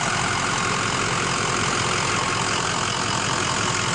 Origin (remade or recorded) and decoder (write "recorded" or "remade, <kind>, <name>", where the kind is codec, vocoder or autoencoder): recorded